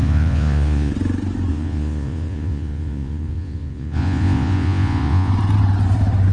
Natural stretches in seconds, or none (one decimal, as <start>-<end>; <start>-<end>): 0.9-1.5; 5.3-6.3